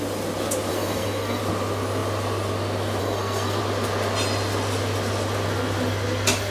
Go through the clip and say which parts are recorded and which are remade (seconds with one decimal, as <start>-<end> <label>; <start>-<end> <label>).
0.0-0.7 recorded; 0.7-1.4 remade; 1.4-3.0 recorded; 3.0-3.6 remade; 3.6-6.5 recorded